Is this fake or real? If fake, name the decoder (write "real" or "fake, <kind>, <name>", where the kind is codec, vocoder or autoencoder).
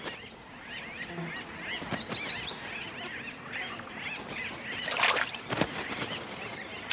fake, vocoder, BigVGAN v2